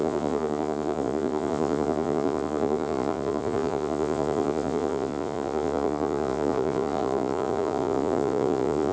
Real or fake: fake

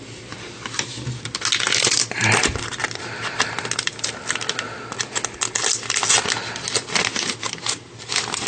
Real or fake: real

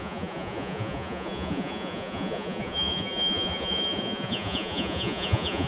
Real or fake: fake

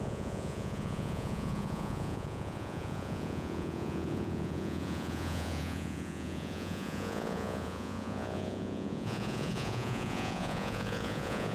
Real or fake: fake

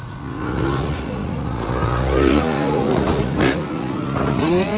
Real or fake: fake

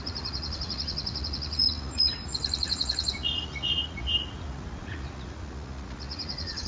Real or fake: fake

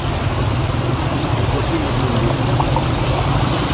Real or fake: real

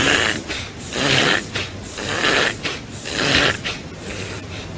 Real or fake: real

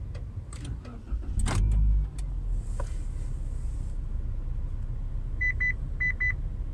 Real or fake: real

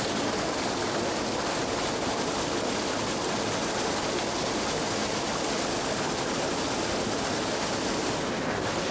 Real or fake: real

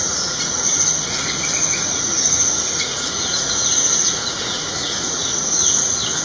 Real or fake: fake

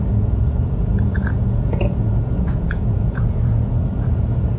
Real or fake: fake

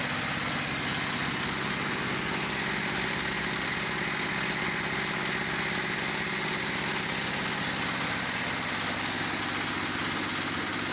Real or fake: real